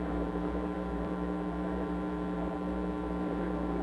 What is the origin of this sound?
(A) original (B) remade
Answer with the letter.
B